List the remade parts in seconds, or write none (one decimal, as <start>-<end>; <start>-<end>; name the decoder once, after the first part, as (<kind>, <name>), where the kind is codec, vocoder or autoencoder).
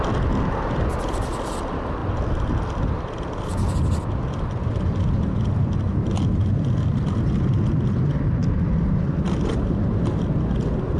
none